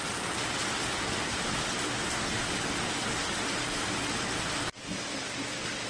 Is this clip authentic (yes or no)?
yes